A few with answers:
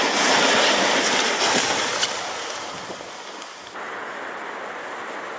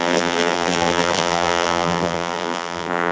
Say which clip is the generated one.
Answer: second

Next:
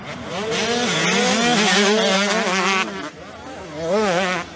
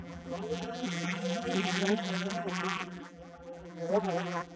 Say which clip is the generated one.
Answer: second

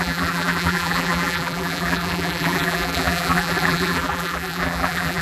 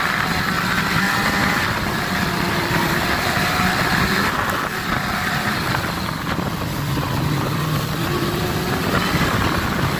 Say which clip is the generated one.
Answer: first